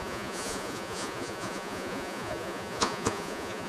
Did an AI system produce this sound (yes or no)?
yes